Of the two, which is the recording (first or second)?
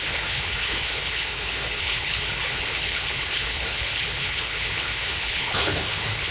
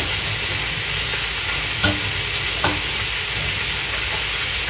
second